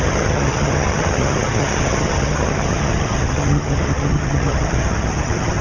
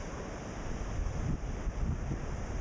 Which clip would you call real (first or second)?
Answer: second